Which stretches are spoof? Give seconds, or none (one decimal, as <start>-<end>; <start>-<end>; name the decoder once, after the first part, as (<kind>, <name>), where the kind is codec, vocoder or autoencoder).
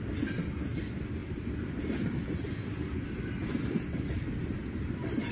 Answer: none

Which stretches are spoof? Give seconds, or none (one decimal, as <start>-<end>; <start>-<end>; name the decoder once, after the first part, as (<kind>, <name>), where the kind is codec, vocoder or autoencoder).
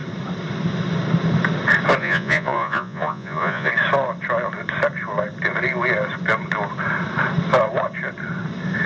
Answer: 2.0-3.7 (vocoder, Vocos)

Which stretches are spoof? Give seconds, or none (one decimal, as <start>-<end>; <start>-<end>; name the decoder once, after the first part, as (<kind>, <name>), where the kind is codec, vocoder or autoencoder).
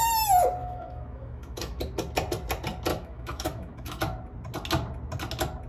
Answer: 0.6-1.8 (autoencoder, DAC-VAE); 2.9-4.0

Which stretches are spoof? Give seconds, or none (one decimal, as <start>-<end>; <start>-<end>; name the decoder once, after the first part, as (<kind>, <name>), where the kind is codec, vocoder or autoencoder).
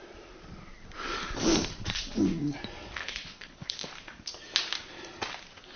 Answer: 3.0-3.9 (codec, HILCodec)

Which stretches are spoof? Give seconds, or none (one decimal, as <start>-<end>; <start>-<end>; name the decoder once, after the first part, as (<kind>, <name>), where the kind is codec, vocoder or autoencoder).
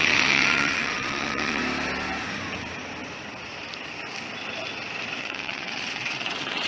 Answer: 0.0-1.6 (vocoder, WaveNeXt); 5.2-6.7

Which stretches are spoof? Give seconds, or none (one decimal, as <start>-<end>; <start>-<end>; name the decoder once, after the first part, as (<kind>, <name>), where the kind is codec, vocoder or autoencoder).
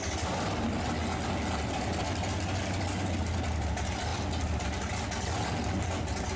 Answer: none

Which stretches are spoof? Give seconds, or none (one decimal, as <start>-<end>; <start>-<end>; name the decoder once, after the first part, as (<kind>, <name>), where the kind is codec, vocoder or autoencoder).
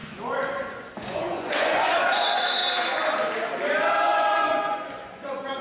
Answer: 0.0-2.6 (vocoder, Vocos); 4.0-5.6